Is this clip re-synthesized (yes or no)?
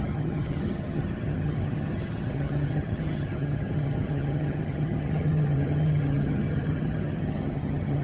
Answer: yes